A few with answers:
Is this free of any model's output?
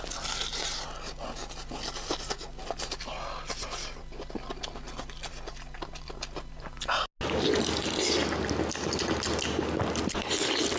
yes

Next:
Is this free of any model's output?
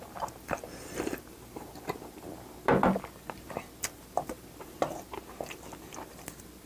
yes